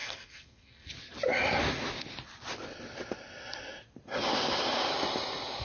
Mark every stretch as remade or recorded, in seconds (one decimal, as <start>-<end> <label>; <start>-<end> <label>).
0.0-0.9 remade; 0.9-5.6 recorded